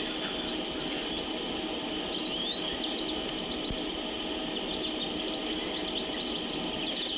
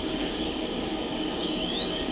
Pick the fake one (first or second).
second